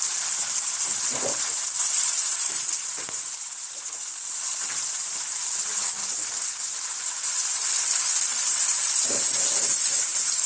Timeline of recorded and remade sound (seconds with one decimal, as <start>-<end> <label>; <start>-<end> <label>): 0.0-7.2 remade; 7.2-8.4 recorded; 8.4-10.5 remade